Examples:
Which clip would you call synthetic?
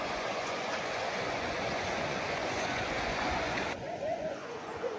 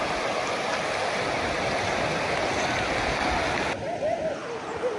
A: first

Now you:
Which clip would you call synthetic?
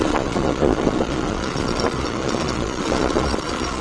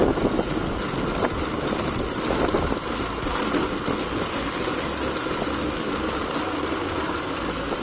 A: first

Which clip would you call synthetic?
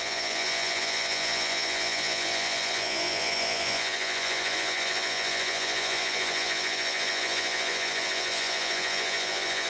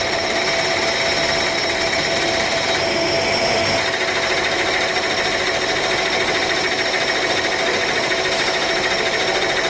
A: first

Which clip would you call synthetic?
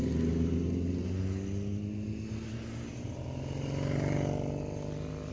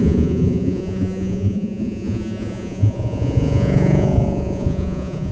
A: second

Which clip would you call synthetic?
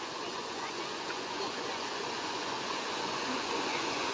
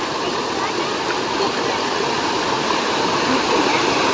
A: first